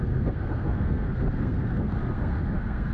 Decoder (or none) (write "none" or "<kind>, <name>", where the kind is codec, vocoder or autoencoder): codec, SNAC